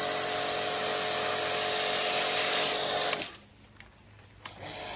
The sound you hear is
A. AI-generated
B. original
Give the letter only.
B